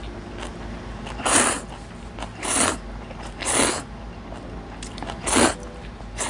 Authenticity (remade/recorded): recorded